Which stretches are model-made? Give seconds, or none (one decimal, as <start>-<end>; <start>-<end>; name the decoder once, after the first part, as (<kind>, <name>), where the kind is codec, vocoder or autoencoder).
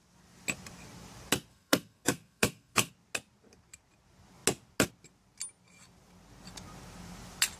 1.5-2.9 (codec, SNAC)